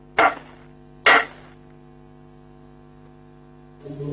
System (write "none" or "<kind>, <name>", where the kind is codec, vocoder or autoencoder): none